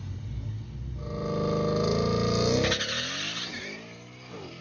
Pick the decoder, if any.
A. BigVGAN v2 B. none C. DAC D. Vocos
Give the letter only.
B